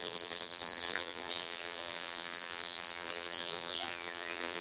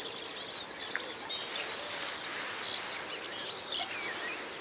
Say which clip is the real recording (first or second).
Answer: second